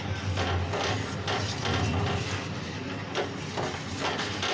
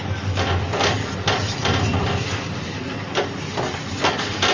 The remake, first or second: second